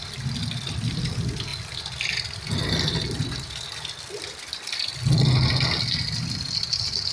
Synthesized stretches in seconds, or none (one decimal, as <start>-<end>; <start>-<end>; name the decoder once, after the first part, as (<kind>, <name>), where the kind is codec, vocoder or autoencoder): none